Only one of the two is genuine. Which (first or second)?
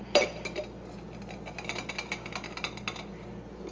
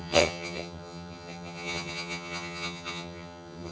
first